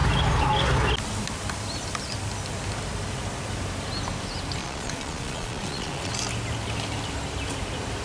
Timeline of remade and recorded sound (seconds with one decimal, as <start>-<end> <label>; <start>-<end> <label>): 0.0-4.6 recorded; 4.6-6.1 remade; 6.1-8.0 recorded